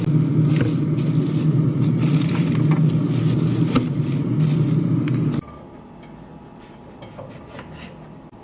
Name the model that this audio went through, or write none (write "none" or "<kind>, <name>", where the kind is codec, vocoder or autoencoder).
none